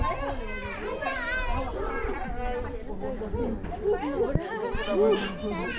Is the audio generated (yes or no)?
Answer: no